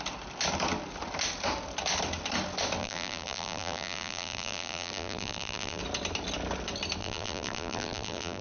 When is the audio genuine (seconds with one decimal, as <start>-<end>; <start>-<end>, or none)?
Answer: 0.0-2.8; 5.8-7.0